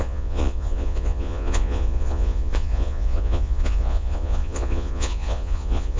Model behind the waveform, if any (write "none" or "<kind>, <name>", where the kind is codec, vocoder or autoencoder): vocoder, Vocos